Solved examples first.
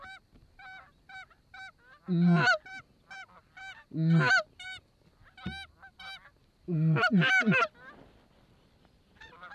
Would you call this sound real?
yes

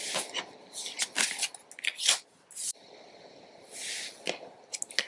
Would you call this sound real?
yes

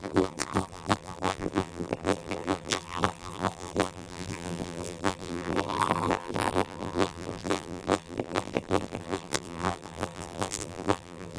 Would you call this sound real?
no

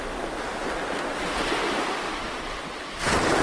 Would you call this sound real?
yes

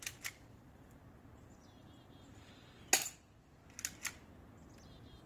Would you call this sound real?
yes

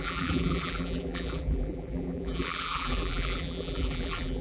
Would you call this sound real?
no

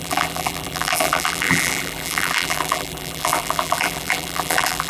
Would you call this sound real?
no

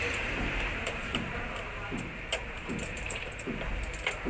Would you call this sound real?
no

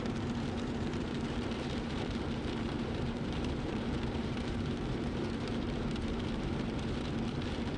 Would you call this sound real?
no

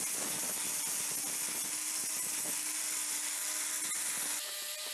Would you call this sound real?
yes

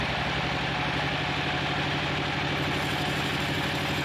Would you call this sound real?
yes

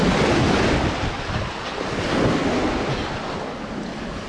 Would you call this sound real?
yes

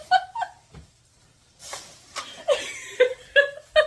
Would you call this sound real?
no